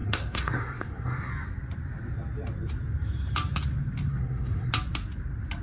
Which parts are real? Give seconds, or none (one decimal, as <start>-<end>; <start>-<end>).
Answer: 1.3-4.1; 4.7-5.6